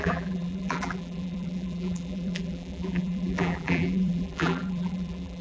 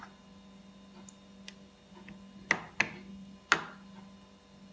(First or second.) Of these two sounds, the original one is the second